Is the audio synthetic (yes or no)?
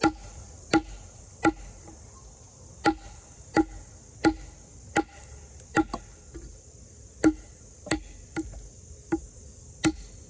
no